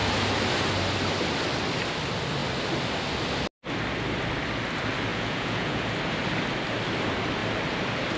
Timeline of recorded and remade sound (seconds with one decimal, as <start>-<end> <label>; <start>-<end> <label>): 0.0-5.1 recorded; 5.1-5.9 remade; 5.9-8.2 recorded